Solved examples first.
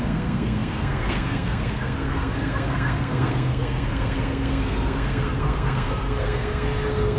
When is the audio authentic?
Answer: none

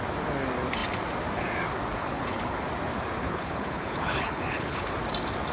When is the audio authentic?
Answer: 0.0-2.0; 2.6-3.2; 4.9-5.5

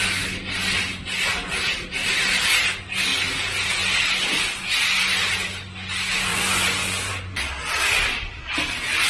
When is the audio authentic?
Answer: 0.0-6.3; 7.1-9.1

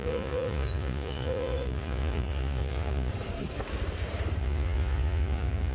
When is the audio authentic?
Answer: 3.1-4.4

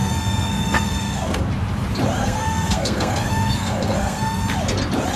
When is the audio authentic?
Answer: 1.4-2.2; 4.4-5.2